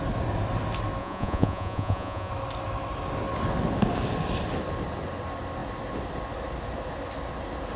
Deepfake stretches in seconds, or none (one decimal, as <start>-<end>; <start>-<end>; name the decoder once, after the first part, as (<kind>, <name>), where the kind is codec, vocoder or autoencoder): 1.0-2.3 (vocoder, Vocos)